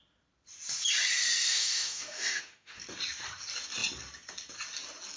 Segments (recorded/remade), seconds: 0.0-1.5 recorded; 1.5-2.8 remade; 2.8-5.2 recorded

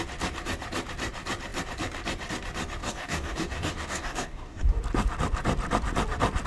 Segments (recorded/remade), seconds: 0.0-2.8 recorded; 2.8-4.8 remade; 4.8-6.5 recorded

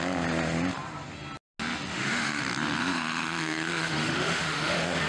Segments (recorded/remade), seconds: 0.0-1.9 recorded; 1.9-2.4 remade; 2.4-2.8 recorded; 2.8-5.1 remade

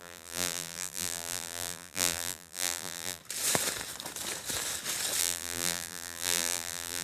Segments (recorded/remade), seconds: 0.0-3.2 remade; 3.2-5.2 recorded; 5.2-7.0 remade

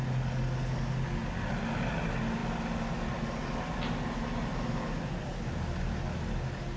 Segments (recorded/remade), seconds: 0.0-6.8 recorded